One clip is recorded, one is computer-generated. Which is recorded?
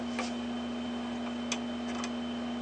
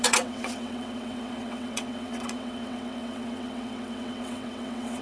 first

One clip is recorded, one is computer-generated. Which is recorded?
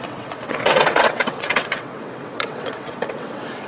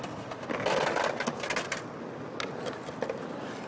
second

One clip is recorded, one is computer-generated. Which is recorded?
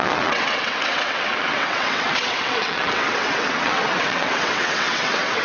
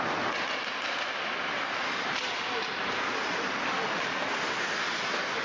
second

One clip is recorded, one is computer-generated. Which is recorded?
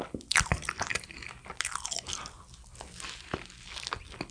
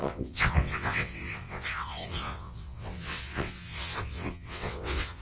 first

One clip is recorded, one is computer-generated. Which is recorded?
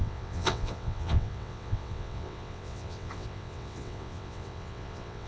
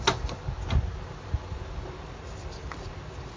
second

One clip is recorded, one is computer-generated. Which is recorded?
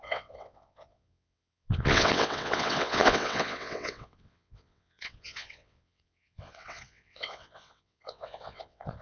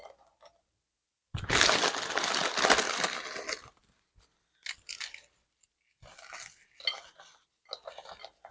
second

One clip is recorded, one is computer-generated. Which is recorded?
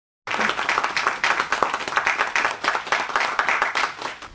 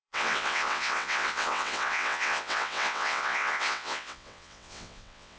first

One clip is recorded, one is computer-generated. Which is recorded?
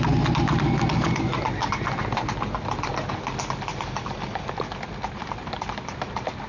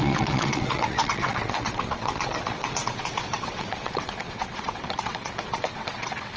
first